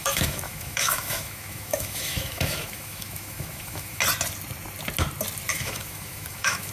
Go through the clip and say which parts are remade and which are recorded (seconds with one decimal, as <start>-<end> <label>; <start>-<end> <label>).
0.0-4.0 remade; 4.0-5.5 recorded; 5.5-6.7 remade